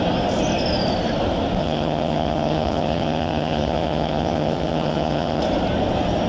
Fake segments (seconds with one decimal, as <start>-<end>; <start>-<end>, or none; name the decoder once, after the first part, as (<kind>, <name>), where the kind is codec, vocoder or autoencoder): 1.6-5.4 (vocoder, HiFi-GAN)